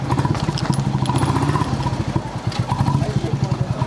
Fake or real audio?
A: real